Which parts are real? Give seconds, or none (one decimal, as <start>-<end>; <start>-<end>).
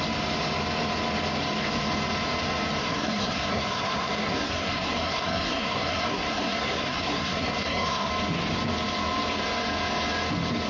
0.0-2.8; 8.1-10.7